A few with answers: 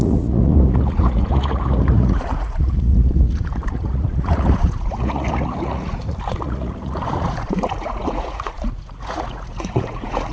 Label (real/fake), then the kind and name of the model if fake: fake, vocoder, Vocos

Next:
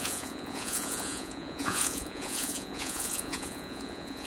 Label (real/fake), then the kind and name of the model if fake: fake, vocoder, Vocos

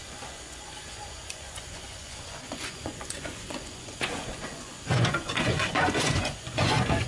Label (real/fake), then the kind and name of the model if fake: fake, vocoder, Vocos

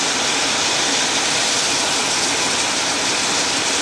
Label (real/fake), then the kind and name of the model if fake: real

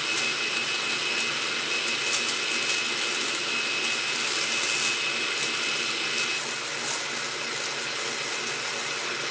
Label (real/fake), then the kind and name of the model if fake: real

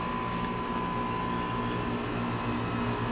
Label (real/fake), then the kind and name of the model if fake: real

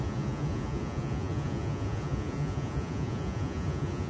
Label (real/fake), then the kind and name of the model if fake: fake, vocoder, Vocos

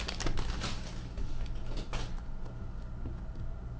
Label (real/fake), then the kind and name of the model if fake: real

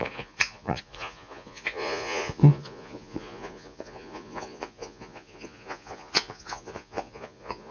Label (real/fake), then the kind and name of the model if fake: fake, vocoder, Vocos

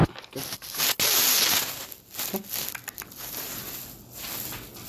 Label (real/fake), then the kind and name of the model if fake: real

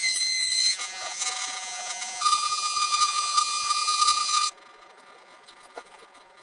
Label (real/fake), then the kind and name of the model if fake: fake, vocoder, Vocos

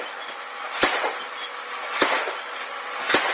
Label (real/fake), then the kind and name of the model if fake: real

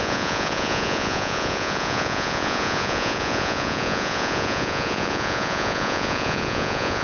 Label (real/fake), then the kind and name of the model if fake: fake, vocoder, Vocos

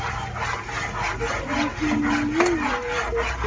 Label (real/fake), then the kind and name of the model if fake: real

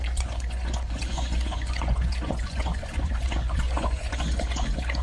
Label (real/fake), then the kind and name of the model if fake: fake, vocoder, Vocos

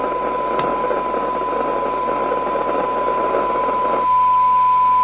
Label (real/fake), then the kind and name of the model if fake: real